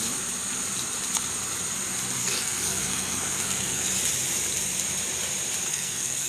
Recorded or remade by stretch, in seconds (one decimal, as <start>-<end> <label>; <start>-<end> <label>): 0.0-2.2 recorded; 2.2-3.8 remade; 3.8-5.7 recorded; 5.7-6.3 remade